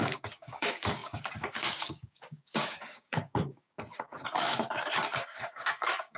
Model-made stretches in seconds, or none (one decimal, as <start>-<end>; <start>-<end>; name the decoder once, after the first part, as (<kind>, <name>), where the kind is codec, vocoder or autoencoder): 0.0-6.2 (codec, DAC)